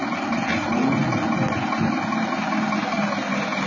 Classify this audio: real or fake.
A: real